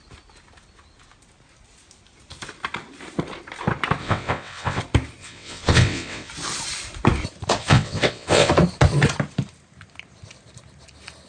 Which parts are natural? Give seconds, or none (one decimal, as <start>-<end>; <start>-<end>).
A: 0.0-4.0; 4.8-5.2; 6.3-7.6; 8.5-11.3